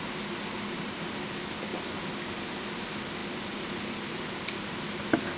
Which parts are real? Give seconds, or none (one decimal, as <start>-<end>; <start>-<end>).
0.0-5.4

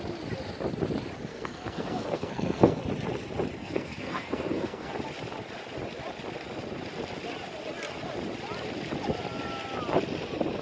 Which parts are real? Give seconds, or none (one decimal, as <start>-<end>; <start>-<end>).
0.0-1.3; 2.8-3.6; 4.9-10.6